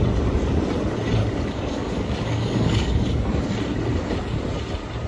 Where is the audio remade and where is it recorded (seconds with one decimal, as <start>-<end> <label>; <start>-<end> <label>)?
0.0-1.2 recorded; 1.2-3.4 remade; 3.4-5.1 recorded